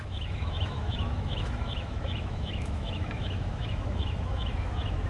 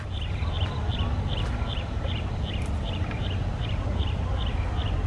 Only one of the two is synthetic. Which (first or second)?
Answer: first